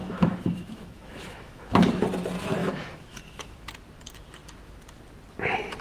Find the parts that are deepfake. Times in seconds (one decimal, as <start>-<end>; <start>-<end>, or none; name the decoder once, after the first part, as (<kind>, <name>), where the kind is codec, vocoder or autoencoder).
0.0-1.9 (autoencoder, DAC-VAE); 2.6-3.7

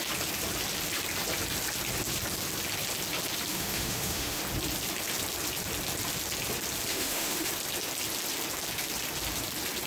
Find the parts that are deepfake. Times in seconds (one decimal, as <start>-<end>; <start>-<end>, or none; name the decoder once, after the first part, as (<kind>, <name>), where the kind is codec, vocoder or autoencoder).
3.5-4.4 (autoencoder, DAC-VAE); 6.9-7.5

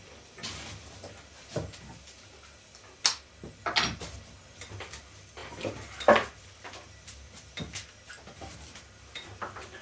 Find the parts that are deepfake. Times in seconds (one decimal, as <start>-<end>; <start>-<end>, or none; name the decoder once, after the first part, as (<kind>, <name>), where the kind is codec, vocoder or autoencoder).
none

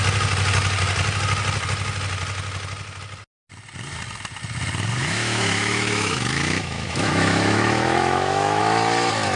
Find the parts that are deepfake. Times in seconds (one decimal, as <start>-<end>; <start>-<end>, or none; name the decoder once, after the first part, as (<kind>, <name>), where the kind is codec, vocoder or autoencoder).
5.0-8.6 (autoencoder, DAC-VAE)

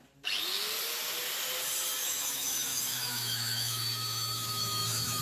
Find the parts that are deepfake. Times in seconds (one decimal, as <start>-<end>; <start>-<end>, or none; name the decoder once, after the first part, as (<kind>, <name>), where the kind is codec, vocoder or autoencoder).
2.0-5.2 (autoencoder, DAC-VAE)

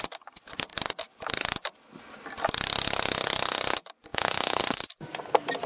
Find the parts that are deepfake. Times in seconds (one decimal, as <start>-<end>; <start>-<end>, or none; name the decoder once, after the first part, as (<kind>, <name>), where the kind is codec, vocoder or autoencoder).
4.1-4.6 (autoencoder, DAC-VAE)